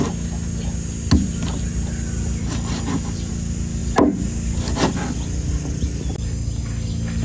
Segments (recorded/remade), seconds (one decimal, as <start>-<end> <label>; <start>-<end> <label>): 0.0-1.7 recorded; 1.7-3.3 remade; 3.3-7.2 recorded